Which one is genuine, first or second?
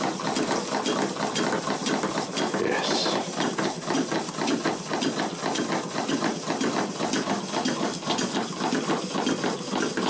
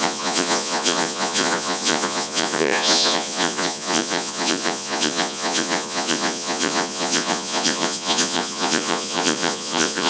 first